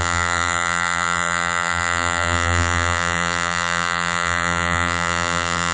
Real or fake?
fake